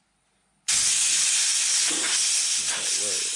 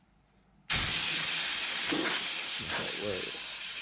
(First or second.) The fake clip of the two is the second